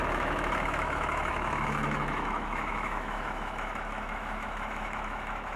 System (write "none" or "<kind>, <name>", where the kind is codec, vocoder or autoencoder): autoencoder, DAC-VAE